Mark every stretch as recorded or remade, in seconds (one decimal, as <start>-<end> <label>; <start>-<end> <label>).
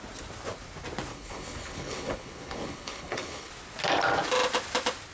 0.0-1.1 recorded; 1.1-3.5 remade; 3.5-5.1 recorded